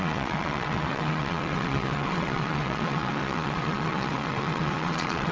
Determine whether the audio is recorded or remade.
remade